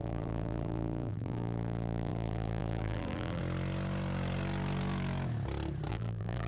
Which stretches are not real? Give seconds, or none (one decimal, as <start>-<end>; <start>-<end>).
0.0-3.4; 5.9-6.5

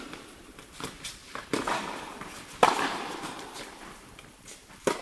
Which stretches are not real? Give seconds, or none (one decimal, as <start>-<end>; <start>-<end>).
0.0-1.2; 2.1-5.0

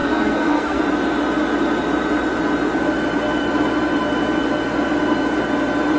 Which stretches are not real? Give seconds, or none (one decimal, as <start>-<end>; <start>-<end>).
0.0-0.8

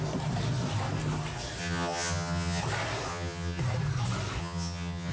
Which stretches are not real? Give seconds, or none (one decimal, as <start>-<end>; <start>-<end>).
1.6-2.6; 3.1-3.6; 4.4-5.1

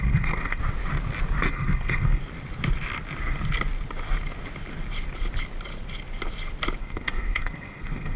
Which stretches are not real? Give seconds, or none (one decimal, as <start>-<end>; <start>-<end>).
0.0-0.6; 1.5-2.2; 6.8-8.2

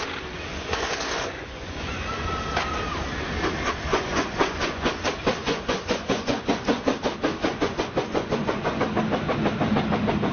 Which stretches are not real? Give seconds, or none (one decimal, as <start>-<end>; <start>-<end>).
0.5-2.3; 3.9-4.9; 5.4-6.9; 7.4-8.8